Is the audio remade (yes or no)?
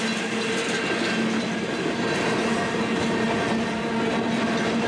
no